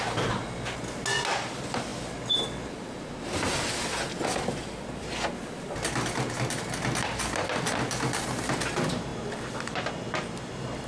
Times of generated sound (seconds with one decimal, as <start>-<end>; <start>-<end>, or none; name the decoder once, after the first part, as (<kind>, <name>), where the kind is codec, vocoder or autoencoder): none